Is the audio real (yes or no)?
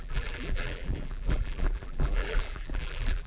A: no